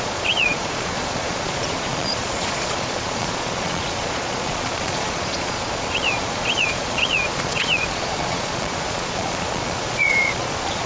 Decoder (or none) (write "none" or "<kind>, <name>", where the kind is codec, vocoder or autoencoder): vocoder, Vocos